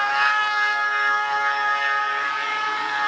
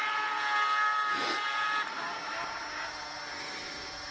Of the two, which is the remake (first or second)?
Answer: first